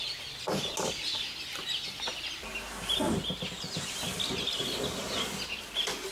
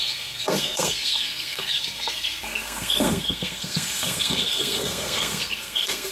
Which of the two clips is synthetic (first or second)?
second